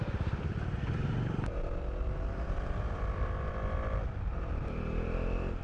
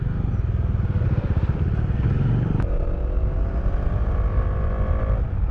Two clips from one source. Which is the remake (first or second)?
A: first